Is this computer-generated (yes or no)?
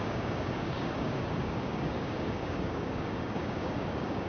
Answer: yes